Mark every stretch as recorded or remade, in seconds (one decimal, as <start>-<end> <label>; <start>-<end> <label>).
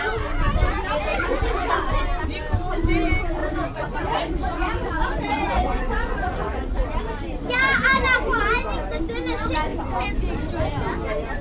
0.0-1.1 recorded; 1.1-1.7 remade; 1.7-3.4 recorded; 3.4-7.0 remade; 7.0-11.4 recorded